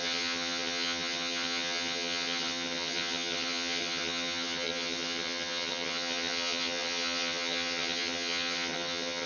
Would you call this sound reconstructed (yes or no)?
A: yes